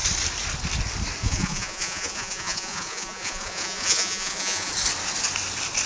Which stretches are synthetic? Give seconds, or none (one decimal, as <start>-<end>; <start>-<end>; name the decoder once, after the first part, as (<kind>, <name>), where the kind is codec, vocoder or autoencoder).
1.2-4.7 (vocoder, Vocos)